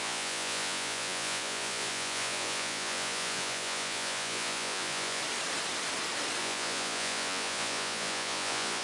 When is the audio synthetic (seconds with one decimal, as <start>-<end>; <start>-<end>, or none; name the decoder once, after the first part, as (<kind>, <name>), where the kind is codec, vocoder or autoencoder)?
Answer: 0.0-5.2 (vocoder, Vocos); 6.4-8.8